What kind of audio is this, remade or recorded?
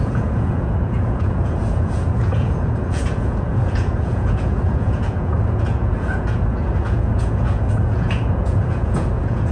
remade